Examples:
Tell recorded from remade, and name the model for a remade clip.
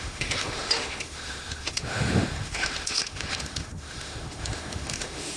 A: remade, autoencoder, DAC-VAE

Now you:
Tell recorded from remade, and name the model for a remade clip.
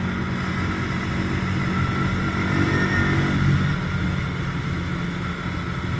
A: recorded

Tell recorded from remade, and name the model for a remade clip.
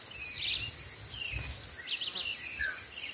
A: recorded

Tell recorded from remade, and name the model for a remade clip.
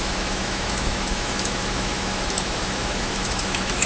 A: remade, autoencoder, DAC-VAE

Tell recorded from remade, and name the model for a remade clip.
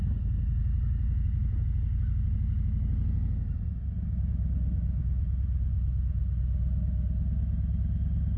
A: recorded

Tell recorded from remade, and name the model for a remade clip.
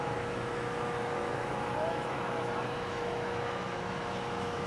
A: remade, autoencoder, DAC-VAE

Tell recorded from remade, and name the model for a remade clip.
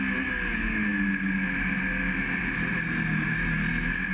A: recorded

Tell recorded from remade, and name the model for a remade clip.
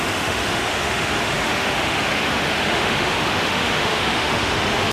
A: remade, autoencoder, DAC-VAE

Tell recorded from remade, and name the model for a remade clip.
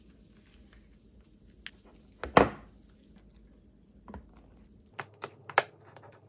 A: recorded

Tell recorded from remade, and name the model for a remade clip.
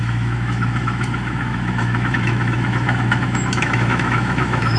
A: remade, autoencoder, DAC-VAE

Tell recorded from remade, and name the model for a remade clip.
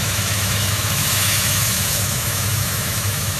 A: remade, autoencoder, DAC-VAE